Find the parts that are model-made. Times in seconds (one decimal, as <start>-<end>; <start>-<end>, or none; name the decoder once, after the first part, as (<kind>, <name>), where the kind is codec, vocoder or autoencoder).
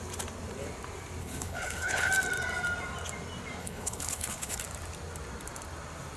1.2-2.1 (codec, HILCodec); 3.6-4.6